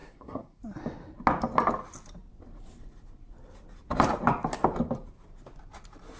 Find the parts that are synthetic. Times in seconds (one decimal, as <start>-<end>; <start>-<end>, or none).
0.0-0.6